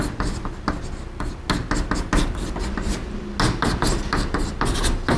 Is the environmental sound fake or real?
real